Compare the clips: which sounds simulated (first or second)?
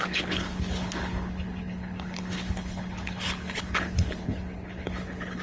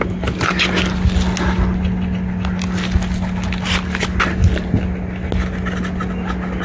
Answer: first